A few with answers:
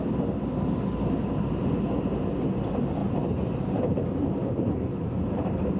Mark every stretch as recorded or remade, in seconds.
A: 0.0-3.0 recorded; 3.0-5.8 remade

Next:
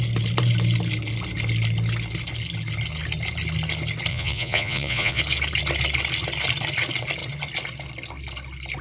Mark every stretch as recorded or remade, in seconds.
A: 0.0-4.1 recorded; 4.1-5.2 remade; 5.2-8.8 recorded

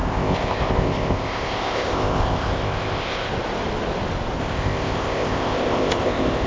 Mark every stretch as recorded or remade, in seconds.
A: 0.0-3.3 remade; 3.3-4.4 recorded; 4.4-6.5 remade

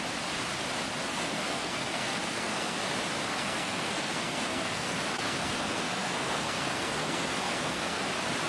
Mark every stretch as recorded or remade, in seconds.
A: 0.0-1.1 recorded; 1.1-2.8 remade; 2.8-3.3 recorded; 3.3-8.0 remade; 8.0-8.5 recorded

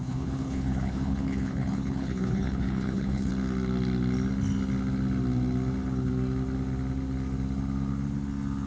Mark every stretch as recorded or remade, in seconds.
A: 0.0-3.3 remade; 3.3-8.7 recorded

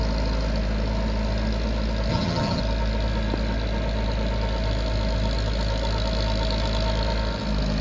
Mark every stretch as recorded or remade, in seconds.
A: 0.0-2.1 recorded; 2.1-2.6 remade; 2.6-7.8 recorded

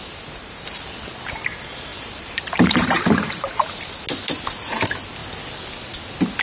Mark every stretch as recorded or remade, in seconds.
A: 0.0-0.9 remade; 0.9-1.9 recorded; 1.9-3.7 remade; 3.7-6.4 recorded